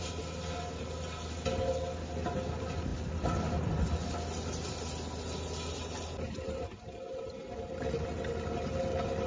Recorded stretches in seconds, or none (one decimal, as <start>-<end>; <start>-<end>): 0.0-9.3